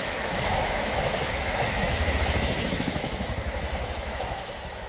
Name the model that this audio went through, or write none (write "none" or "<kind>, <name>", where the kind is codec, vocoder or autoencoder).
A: autoencoder, DAC-VAE